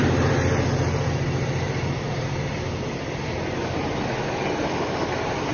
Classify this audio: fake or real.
real